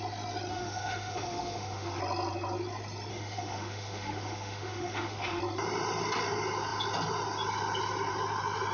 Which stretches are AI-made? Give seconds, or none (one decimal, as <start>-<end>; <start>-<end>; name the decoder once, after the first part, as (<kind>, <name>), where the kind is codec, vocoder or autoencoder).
0.5-2.0 (autoencoder, DAC-VAE); 3.1-5.4